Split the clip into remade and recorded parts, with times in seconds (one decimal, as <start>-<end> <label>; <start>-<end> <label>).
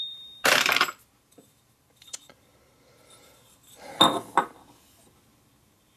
0.0-2.5 remade; 2.5-5.6 recorded; 5.6-6.0 remade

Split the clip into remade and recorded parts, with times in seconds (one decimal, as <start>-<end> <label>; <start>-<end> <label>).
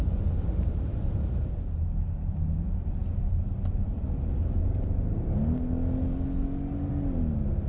0.0-7.7 recorded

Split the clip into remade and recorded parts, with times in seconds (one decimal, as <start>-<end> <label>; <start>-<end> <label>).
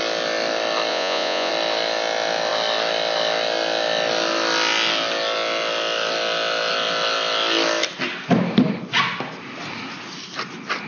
0.0-0.9 recorded; 0.9-1.5 remade; 1.5-10.9 recorded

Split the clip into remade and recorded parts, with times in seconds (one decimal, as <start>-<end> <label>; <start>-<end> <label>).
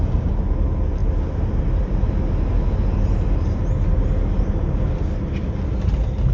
0.0-6.3 recorded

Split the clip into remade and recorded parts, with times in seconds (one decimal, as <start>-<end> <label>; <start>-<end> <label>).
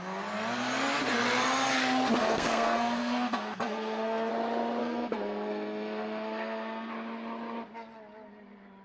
0.0-2.2 recorded; 2.2-4.3 remade; 4.3-4.8 recorded; 4.8-6.9 remade; 6.9-8.8 recorded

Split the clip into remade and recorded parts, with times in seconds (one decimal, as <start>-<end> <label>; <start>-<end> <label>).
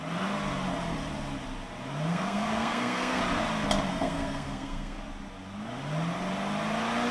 0.0-2.1 recorded; 2.1-3.2 remade; 3.2-3.9 recorded; 3.9-5.0 remade; 5.0-7.1 recorded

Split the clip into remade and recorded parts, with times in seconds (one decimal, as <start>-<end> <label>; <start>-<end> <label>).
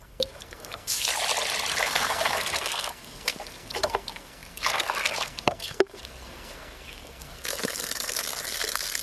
0.0-1.1 remade; 1.1-1.8 recorded; 1.8-9.0 remade